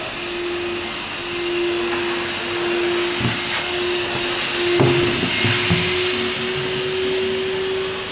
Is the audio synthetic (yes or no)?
no